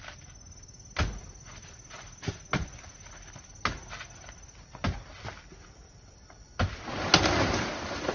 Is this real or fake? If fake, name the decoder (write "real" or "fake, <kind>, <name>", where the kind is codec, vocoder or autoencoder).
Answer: real